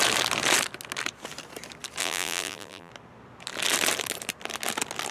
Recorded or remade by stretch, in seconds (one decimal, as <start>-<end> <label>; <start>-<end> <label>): 0.0-2.0 recorded; 2.0-2.9 remade; 2.9-5.1 recorded